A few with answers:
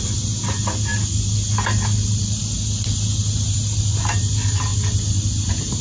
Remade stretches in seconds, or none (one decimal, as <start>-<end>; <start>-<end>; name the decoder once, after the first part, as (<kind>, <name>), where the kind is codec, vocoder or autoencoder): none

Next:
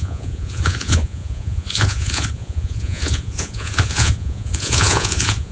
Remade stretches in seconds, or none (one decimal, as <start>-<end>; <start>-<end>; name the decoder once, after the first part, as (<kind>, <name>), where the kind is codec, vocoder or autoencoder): 0.0-5.5 (vocoder, Vocos)

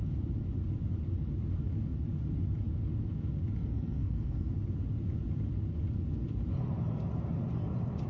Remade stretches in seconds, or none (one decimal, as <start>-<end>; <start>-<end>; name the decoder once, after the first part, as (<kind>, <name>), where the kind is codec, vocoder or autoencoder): 3.6-4.5 (codec, SNAC)

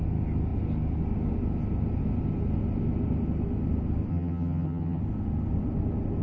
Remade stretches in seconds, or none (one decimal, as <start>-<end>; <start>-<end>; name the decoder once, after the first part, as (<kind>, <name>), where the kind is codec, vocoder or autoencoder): 4.1-5.0 (vocoder, HiFi-GAN)